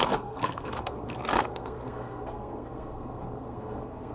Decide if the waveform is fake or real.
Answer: fake